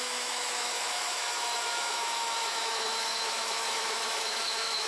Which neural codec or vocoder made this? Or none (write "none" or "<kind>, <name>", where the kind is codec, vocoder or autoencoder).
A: autoencoder, DAC-VAE